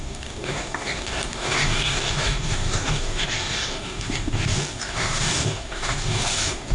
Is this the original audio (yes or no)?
no